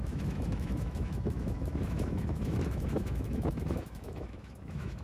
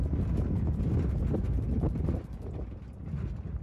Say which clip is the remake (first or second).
first